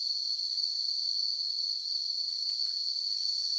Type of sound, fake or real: real